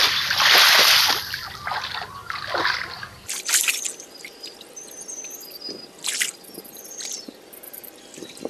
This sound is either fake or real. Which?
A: real